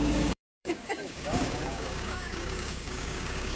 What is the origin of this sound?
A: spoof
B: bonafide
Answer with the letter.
A